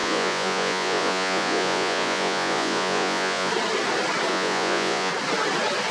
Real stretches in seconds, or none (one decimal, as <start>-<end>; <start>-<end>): 3.5-4.3; 5.1-5.9